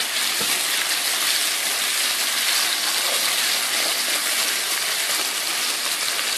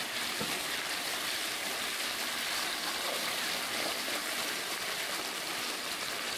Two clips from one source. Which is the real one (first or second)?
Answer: first